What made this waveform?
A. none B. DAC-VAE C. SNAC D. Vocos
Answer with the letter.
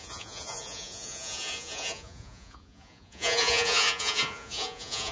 D